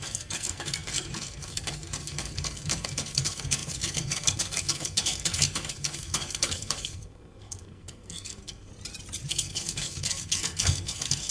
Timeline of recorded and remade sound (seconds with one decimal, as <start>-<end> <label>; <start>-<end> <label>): 0.0-8.7 remade; 8.7-9.3 recorded; 9.3-11.3 remade